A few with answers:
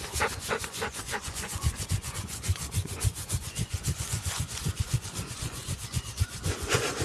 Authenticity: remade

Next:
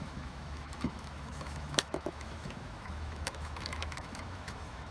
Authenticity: remade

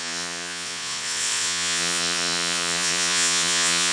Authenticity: remade